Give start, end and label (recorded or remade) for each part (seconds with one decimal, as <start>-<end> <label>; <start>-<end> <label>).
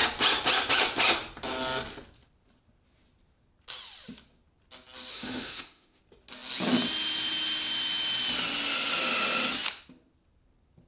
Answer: 0.0-5.1 recorded; 5.1-6.0 remade; 6.0-10.9 recorded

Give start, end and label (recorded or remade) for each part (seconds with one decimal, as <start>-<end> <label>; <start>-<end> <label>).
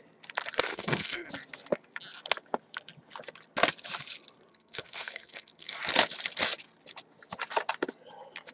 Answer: 0.0-0.7 recorded; 0.7-1.3 remade; 1.3-4.5 recorded; 4.5-5.8 remade; 5.8-8.5 recorded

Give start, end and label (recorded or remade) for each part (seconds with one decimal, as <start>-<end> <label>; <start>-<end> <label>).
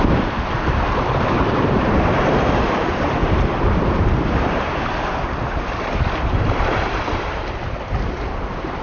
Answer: 0.0-4.7 remade; 4.7-5.2 recorded; 5.2-8.8 remade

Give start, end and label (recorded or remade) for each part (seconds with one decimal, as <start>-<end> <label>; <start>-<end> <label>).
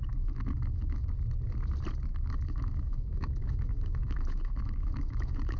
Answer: 0.0-1.1 remade; 1.1-2.1 recorded; 2.1-5.6 remade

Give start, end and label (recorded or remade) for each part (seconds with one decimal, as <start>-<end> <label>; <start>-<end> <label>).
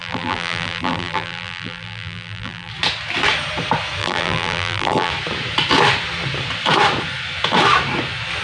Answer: 0.0-2.7 remade; 2.7-4.0 recorded; 4.0-5.1 remade; 5.1-8.4 recorded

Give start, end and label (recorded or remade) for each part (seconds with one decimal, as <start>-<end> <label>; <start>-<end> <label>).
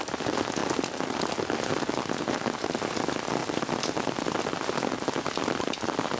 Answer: 0.0-6.2 recorded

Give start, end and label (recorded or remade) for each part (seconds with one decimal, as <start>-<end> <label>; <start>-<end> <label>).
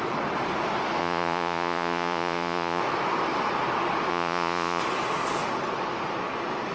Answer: 0.0-1.0 recorded; 1.0-2.8 remade; 2.8-4.1 recorded; 4.1-4.8 remade; 4.8-6.7 recorded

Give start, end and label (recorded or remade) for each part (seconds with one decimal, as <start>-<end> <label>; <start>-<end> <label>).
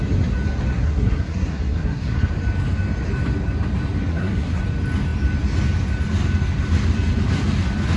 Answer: 0.0-0.7 recorded; 0.7-2.3 remade; 2.3-4.1 recorded; 4.1-4.6 remade; 4.6-8.0 recorded